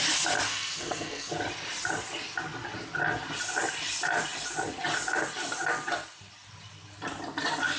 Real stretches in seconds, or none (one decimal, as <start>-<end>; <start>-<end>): 0.0-0.5; 1.3-7.8